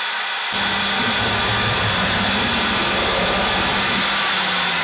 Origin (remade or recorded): recorded